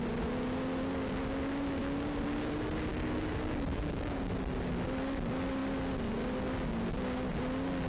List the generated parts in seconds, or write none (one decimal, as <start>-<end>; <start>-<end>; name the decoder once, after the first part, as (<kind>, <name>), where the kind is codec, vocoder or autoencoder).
1.8-2.5 (codec, DAC); 2.9-4.3